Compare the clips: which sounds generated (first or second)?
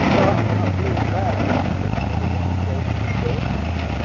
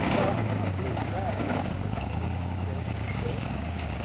second